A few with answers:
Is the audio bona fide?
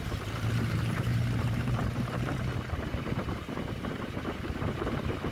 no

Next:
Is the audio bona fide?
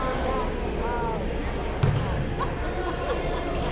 yes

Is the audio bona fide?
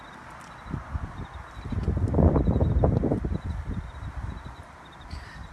yes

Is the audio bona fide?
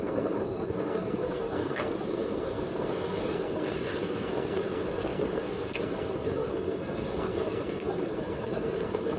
no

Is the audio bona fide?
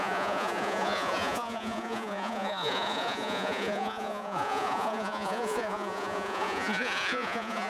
no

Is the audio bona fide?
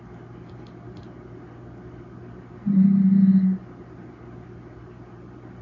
yes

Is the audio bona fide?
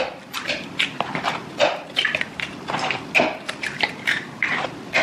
yes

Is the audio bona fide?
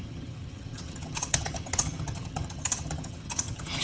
no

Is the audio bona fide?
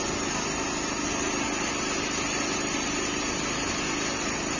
yes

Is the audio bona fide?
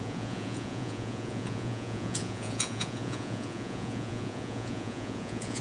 no